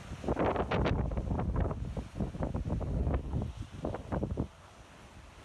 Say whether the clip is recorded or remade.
recorded